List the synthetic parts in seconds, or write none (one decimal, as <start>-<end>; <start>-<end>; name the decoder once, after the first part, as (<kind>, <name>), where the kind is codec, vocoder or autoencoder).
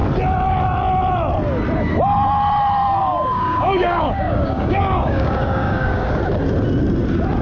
3.0-6.2 (codec, DAC)